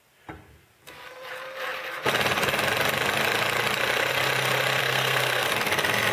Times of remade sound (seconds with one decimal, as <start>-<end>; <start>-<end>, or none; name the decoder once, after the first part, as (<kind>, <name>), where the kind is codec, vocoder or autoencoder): 4.8-5.5 (codec, SNAC)